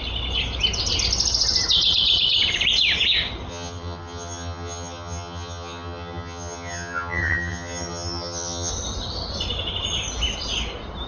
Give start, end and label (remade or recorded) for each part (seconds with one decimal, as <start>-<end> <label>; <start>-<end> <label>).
0.0-3.5 recorded; 3.5-8.7 remade; 8.7-11.1 recorded